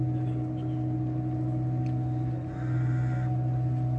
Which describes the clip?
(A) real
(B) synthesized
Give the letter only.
A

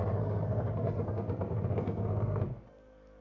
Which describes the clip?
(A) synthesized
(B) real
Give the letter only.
A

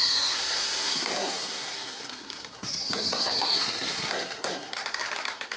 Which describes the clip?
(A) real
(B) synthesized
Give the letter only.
B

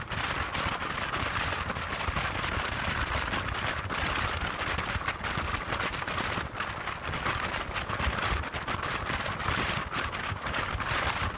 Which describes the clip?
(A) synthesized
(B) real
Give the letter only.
B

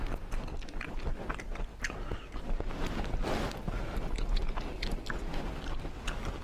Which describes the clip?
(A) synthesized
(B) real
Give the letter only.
B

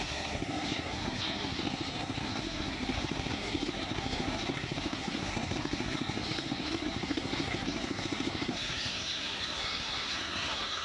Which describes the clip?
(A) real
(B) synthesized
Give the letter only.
B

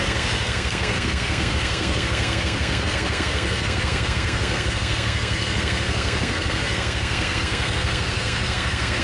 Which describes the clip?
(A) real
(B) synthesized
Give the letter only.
B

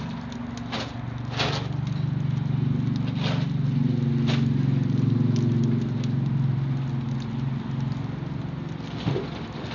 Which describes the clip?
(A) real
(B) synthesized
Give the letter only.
A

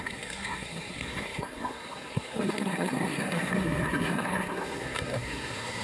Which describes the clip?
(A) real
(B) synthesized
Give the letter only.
B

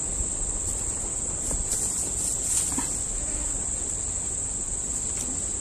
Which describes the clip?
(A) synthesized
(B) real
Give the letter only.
B